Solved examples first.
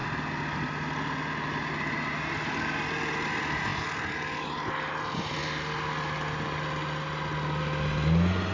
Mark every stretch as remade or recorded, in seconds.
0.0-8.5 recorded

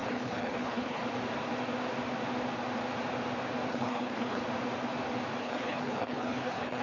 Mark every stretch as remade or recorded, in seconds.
0.0-1.0 remade; 1.0-3.7 recorded; 3.7-4.4 remade; 4.4-5.4 recorded; 5.4-6.8 remade

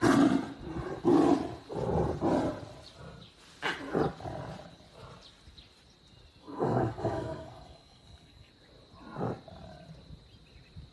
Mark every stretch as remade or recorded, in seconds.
0.0-6.4 recorded; 6.4-8.5 remade; 8.5-10.9 recorded

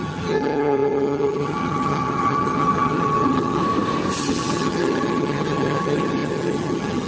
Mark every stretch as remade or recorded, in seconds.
0.0-3.6 remade; 3.6-4.2 recorded; 4.2-7.1 remade

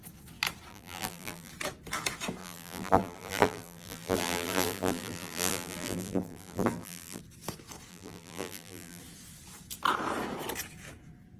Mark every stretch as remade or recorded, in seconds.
0.0-0.7 recorded; 0.7-1.5 remade; 1.5-2.4 recorded; 2.4-7.2 remade; 7.2-7.9 recorded; 7.9-9.0 remade; 9.0-11.4 recorded